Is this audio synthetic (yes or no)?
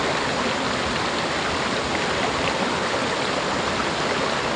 no